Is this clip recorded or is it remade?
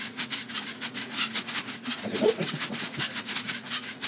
remade